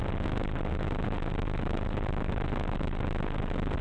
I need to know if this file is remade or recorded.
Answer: recorded